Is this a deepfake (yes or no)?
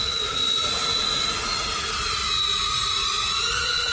yes